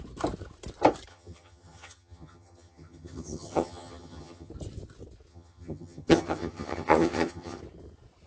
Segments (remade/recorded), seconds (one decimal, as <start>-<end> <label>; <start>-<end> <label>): 0.0-1.1 recorded; 1.1-4.5 remade; 4.5-5.3 recorded; 5.3-7.6 remade; 7.6-8.3 recorded